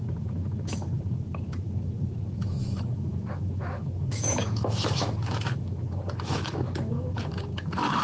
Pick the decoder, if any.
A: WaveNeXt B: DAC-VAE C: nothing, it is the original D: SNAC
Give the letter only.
B